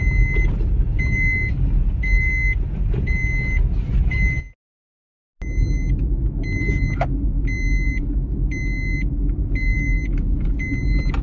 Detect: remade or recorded recorded